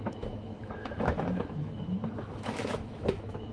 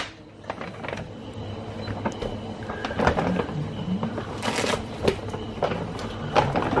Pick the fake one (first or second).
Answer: first